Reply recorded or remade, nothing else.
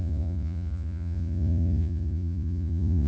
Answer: remade